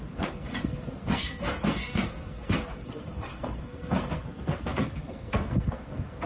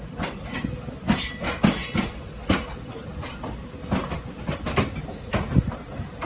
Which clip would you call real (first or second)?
second